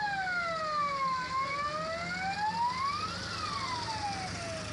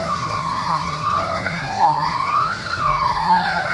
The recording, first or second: first